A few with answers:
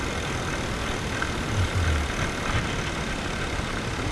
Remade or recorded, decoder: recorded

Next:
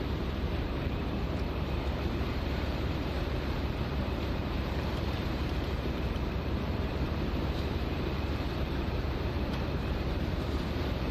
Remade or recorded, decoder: remade, vocoder, BigVGAN v2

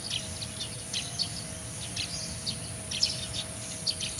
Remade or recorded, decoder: recorded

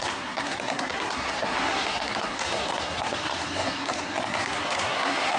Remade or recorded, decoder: remade, codec, SNAC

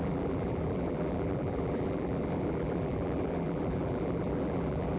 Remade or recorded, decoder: remade, vocoder, BigVGAN v2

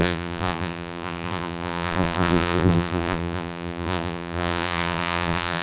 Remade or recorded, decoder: remade, vocoder, BigVGAN v2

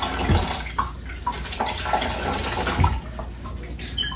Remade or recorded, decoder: recorded